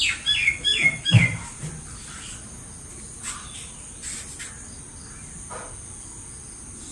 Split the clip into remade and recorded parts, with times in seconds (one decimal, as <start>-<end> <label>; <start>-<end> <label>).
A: 0.0-0.4 recorded; 0.4-1.2 remade; 1.2-6.9 recorded

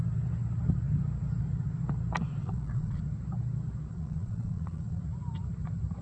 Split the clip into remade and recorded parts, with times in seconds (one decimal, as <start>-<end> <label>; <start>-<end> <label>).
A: 0.0-2.4 recorded; 2.4-3.0 remade; 3.0-3.9 recorded; 3.9-5.0 remade; 5.0-6.0 recorded

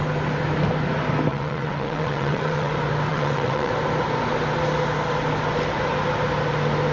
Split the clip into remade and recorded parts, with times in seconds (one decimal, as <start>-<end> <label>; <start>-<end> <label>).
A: 0.0-1.3 recorded; 1.3-2.7 remade; 2.7-3.1 recorded; 3.1-3.7 remade; 3.7-6.9 recorded

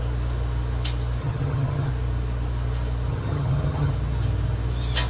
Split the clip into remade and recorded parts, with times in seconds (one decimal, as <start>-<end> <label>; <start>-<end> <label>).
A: 0.0-1.2 recorded; 1.2-1.9 remade; 1.9-3.1 recorded; 3.1-3.9 remade; 3.9-5.1 recorded

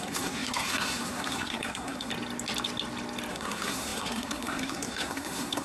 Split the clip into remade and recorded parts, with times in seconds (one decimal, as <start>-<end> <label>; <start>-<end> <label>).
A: 0.0-2.1 remade; 2.1-3.3 recorded; 3.3-5.6 remade